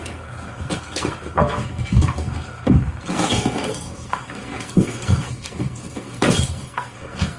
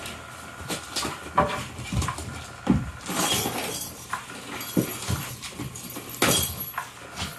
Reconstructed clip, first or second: first